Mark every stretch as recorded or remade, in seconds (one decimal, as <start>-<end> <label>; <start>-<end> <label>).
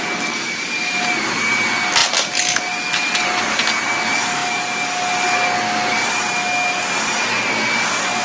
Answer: 0.0-8.2 recorded